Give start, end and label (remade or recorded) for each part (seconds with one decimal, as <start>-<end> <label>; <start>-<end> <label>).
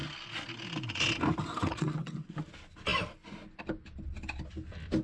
0.0-1.6 recorded; 1.6-2.4 remade; 2.4-5.0 recorded